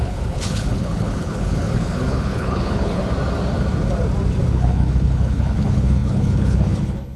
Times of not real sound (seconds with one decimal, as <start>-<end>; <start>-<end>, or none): 0.0-3.0; 4.5-7.2